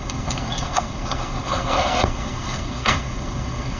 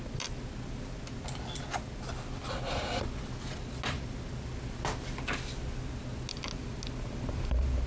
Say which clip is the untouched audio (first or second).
second